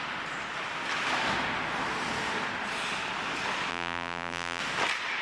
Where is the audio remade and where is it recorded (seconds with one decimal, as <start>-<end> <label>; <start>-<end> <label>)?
0.0-3.7 recorded; 3.7-4.6 remade; 4.6-5.2 recorded